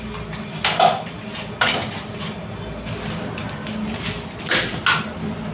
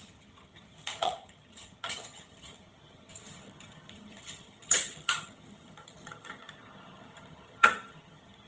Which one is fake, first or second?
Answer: second